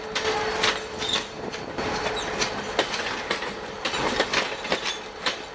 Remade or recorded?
recorded